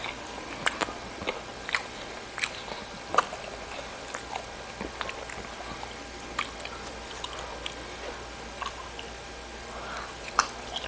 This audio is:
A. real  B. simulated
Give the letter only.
A